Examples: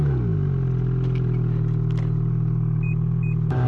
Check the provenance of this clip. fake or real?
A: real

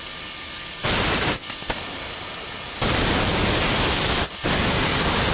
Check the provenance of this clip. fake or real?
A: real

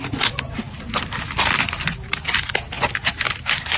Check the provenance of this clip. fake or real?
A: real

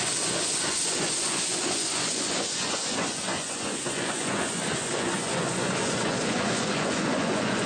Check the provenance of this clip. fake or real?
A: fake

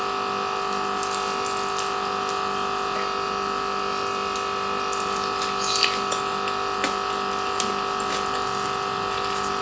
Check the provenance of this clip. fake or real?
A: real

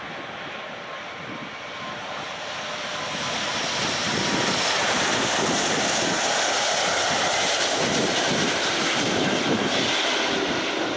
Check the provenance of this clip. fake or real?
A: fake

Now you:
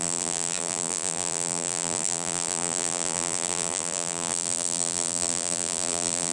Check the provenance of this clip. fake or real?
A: fake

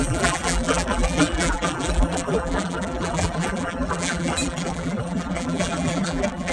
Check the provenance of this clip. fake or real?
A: fake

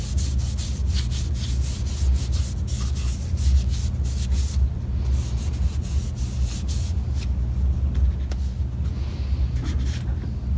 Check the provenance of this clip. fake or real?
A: real